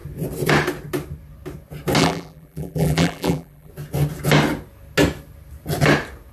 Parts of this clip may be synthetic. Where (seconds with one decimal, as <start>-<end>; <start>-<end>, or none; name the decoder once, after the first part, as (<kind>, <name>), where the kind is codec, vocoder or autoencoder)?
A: 2.0-3.7 (vocoder, BigVGAN v2)